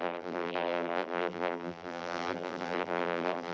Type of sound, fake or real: fake